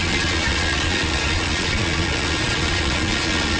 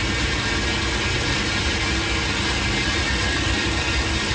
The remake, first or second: first